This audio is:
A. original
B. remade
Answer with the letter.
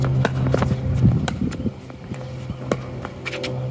A